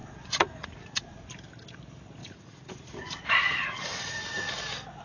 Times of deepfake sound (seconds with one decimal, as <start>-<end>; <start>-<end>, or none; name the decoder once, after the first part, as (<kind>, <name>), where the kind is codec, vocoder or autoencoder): 0.0-1.3 (vocoder, Vocos); 2.2-4.5